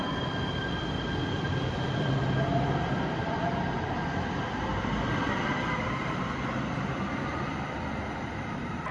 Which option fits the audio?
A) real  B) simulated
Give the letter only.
B